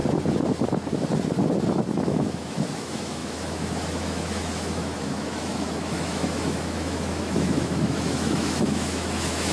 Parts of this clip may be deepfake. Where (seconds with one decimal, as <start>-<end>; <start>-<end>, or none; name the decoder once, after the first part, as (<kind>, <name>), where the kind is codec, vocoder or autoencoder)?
1.9-9.5 (autoencoder, DAC-VAE)